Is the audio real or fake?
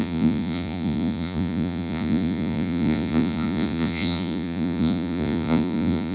fake